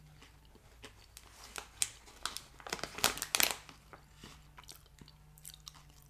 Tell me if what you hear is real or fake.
real